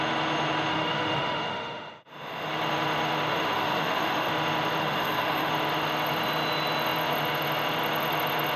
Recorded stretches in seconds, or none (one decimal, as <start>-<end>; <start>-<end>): 0.0-0.7; 2.5-3.3; 4.3-4.8; 5.5-8.6